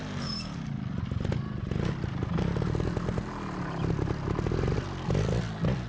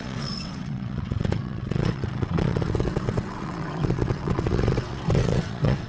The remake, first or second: second